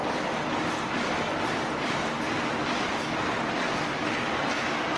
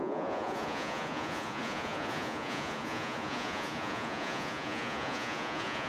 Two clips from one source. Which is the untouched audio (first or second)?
first